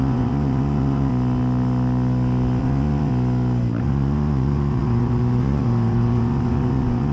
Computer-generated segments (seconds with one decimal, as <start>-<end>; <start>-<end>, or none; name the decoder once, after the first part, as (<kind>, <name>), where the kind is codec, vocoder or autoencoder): 0.0-1.1 (vocoder, Vocos); 2.6-3.1; 3.8-7.1